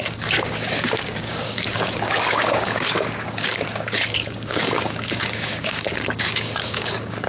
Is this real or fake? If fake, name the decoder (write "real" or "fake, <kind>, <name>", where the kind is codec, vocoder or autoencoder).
fake, codec, DAC